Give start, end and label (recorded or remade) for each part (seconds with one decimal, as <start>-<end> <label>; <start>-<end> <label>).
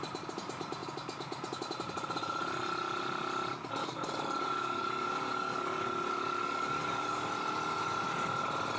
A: 0.0-3.8 recorded; 3.8-7.2 remade; 7.2-8.8 recorded